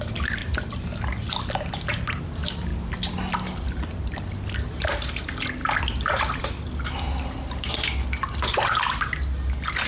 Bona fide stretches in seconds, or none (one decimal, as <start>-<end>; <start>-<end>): 0.0-0.4; 2.2-5.6; 7.7-9.9